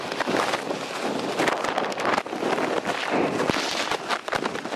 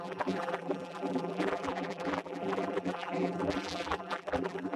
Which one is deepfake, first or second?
second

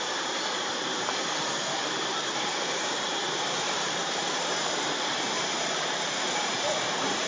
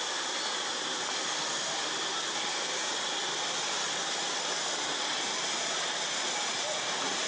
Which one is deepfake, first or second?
first